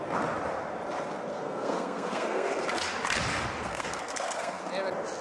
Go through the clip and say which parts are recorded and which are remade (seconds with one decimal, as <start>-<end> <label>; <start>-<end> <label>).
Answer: 0.0-1.3 recorded; 1.3-2.5 remade; 2.5-3.6 recorded; 3.6-4.6 remade; 4.6-5.2 recorded

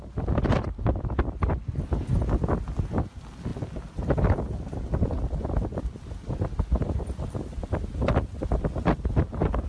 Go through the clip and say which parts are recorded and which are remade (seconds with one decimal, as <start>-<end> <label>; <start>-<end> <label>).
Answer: 0.0-9.7 recorded

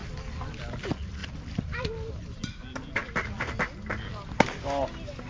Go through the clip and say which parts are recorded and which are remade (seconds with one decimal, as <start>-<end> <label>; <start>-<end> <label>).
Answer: 0.0-1.2 recorded; 1.2-2.1 remade; 2.1-5.3 recorded

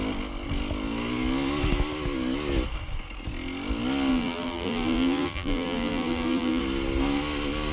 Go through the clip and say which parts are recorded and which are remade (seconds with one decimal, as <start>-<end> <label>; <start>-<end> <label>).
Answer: 0.0-4.1 recorded; 4.1-6.6 remade; 6.6-7.7 recorded

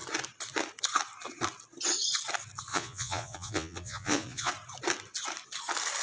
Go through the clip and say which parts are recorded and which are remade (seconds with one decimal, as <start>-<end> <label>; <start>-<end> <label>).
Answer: 0.0-2.7 recorded; 2.7-4.5 remade; 4.5-6.0 recorded